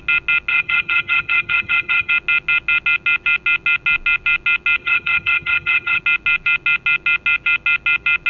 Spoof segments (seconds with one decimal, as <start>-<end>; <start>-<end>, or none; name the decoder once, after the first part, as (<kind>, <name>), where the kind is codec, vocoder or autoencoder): 0.5-2.1 (vocoder, HiFi-GAN); 4.8-6.0